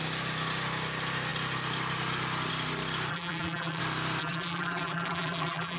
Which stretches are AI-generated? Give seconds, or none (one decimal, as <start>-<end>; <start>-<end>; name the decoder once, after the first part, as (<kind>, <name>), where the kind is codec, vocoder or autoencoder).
3.1-3.8 (vocoder, BigVGAN v2); 4.2-5.8